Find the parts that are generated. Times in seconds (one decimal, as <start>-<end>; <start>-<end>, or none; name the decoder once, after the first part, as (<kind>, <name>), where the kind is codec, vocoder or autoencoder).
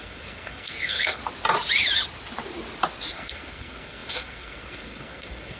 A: 0.0-1.2 (codec, SNAC); 3.1-5.6